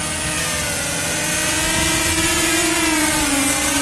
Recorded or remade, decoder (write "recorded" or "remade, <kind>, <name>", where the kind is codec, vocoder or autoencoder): recorded